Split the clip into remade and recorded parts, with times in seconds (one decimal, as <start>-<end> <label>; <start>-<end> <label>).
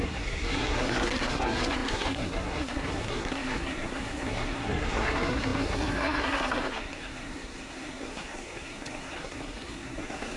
0.0-10.4 remade